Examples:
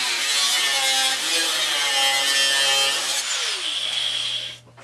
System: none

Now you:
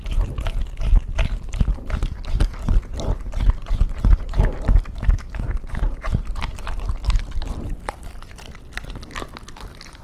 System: none